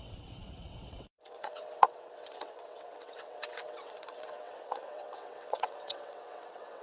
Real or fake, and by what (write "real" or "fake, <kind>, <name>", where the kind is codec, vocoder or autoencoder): fake, vocoder, WaveNeXt